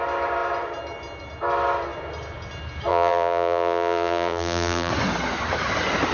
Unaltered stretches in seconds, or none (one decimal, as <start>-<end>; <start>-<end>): 0.0-2.9; 4.9-6.1